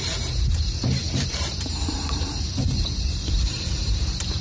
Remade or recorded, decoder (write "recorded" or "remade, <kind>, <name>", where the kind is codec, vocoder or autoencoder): remade, vocoder, BigVGAN v2